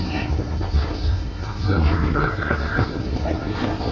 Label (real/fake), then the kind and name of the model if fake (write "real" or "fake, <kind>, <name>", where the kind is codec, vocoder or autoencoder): fake, codec, SNAC